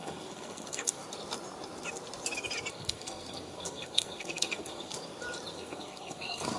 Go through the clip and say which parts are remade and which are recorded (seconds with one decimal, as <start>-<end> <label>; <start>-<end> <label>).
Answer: 0.0-1.0 remade; 1.0-2.7 recorded; 2.7-4.9 remade; 4.9-5.5 recorded; 5.5-6.6 remade